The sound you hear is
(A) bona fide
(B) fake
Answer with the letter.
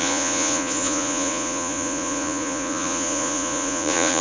B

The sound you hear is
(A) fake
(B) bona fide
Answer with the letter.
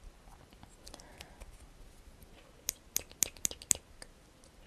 B